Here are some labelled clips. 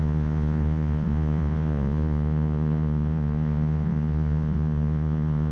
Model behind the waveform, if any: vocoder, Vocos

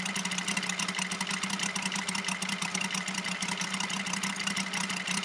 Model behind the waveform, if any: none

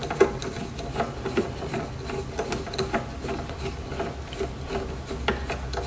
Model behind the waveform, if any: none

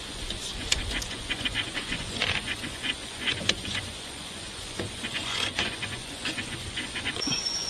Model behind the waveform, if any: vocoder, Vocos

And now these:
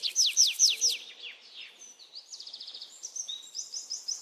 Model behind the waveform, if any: none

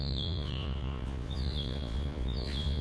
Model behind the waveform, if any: vocoder, Vocos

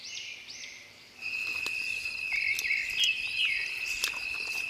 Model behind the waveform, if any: none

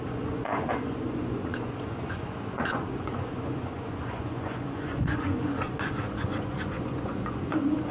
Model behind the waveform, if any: vocoder, Vocos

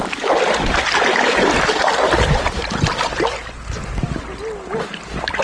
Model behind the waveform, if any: none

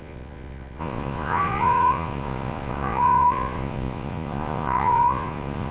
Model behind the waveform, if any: vocoder, Vocos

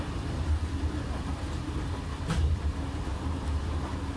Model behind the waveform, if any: none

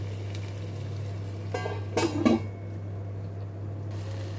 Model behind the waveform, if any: none